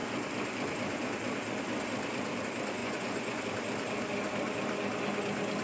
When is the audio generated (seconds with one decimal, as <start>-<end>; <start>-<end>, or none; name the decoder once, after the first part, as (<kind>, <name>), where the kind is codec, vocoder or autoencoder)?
2.8-3.4 (vocoder, Vocos)

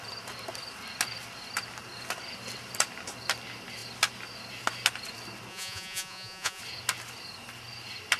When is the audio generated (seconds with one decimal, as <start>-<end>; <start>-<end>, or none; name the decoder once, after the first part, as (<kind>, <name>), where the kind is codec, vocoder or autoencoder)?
5.5-6.6 (vocoder, Vocos)

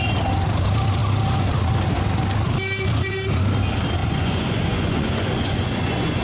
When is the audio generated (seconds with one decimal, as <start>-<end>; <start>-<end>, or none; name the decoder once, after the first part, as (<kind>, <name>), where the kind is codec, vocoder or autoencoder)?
4.0-6.2 (vocoder, Vocos)

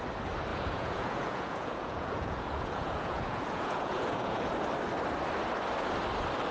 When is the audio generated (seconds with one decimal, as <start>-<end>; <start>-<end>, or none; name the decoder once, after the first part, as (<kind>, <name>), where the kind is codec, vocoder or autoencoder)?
0.5-4.4 (vocoder, Vocos)